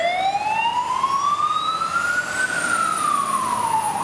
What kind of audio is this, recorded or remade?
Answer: recorded